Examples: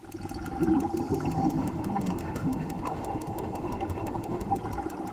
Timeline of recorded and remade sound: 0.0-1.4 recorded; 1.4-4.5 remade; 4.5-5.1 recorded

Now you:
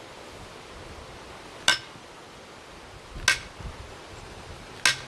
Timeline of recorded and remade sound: 0.0-5.1 recorded

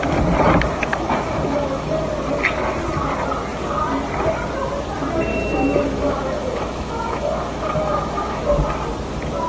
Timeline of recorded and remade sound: 0.0-0.9 recorded; 0.9-1.9 remade; 1.9-5.3 recorded; 5.3-8.4 remade; 8.4-9.5 recorded

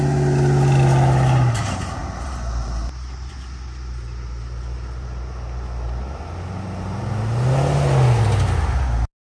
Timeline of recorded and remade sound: 0.0-9.4 recorded